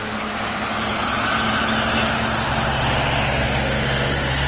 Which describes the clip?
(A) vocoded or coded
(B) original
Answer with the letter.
B